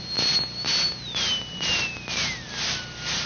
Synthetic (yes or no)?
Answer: no